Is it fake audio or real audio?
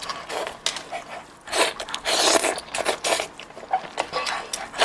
real